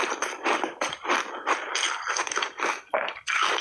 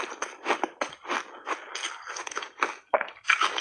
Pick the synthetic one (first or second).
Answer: first